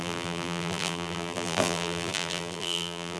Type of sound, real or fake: fake